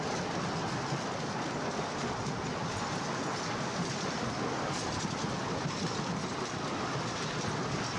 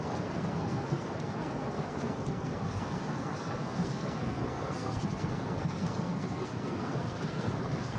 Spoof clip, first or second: second